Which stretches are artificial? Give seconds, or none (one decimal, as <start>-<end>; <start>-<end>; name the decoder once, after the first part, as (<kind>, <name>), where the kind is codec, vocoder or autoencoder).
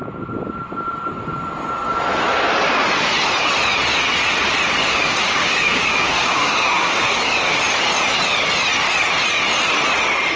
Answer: 4.8-7.6 (codec, DAC)